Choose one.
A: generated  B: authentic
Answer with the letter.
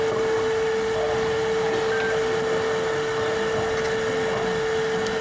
B